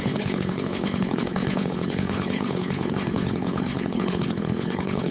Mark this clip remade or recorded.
remade